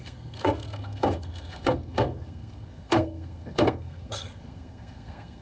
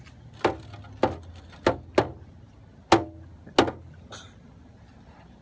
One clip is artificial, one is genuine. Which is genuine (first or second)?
second